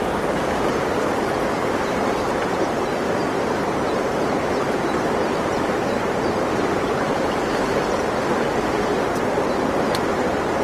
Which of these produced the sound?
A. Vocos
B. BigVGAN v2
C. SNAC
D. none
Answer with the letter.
B